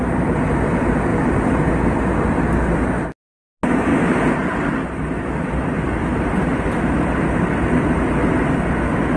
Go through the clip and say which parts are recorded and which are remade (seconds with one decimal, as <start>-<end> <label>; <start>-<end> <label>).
0.0-1.1 recorded; 1.1-1.7 remade; 1.7-3.9 recorded; 3.9-8.5 remade; 8.5-9.2 recorded